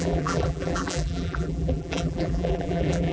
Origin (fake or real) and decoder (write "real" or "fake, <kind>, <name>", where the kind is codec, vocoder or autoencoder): fake, vocoder, BigVGAN v2